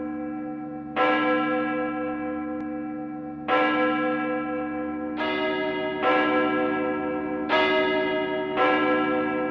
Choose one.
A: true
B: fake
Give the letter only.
A